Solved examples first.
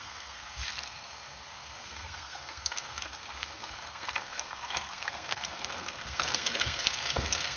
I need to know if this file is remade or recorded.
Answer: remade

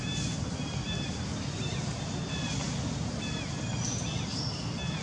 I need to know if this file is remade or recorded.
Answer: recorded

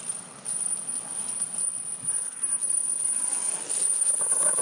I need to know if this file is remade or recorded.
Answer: recorded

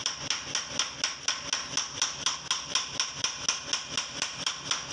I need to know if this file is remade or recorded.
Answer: recorded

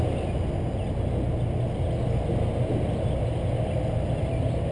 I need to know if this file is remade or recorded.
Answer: recorded